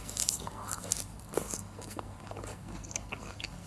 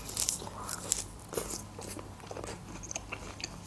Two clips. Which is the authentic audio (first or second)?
second